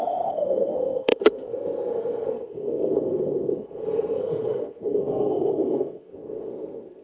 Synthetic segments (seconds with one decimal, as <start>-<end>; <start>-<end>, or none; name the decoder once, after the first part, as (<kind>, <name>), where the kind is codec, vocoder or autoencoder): 0.0-7.0 (codec, SNAC)

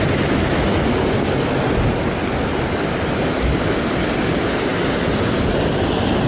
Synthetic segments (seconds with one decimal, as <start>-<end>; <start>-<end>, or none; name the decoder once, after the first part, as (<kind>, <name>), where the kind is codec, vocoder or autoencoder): none